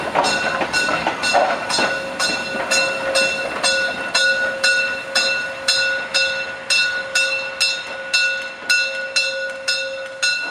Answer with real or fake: real